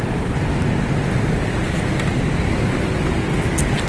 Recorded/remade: recorded